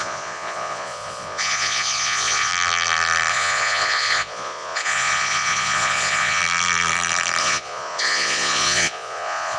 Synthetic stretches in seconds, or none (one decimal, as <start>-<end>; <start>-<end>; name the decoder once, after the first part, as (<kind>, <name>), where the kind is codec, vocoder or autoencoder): 0.0-2.5 (vocoder, Vocos); 3.3-6.4; 7.4-9.6